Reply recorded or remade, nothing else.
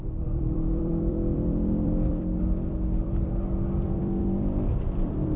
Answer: remade